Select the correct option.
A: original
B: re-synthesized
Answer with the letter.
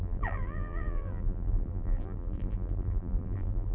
B